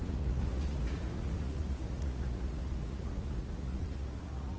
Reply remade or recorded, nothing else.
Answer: remade